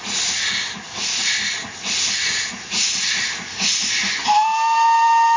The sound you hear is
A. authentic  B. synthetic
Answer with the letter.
A